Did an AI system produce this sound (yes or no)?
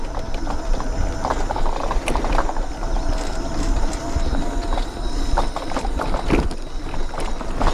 no